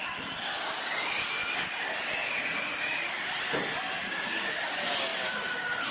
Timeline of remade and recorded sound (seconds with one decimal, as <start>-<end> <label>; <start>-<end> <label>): 0.0-5.9 recorded